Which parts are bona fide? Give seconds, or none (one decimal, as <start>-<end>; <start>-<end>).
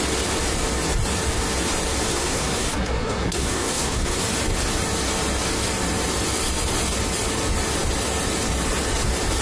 0.0-2.1; 4.2-9.4